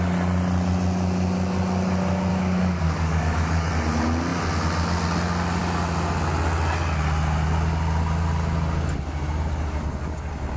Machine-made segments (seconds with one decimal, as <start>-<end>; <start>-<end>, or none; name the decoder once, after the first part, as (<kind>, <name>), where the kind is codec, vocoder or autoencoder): 2.3-3.7 (codec, DAC)